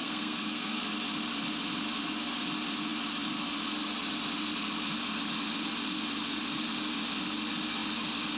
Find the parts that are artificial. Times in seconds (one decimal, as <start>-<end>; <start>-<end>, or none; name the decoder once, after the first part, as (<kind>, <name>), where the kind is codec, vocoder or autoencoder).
0.0-0.8 (codec, SNAC)